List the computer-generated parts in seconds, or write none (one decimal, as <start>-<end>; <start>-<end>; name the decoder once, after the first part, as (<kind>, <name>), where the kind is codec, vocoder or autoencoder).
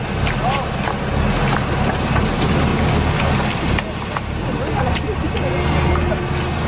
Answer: none